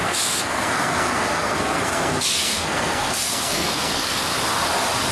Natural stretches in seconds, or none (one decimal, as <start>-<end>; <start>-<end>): 4.3-5.1